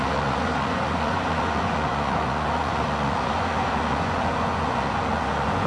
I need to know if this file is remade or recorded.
remade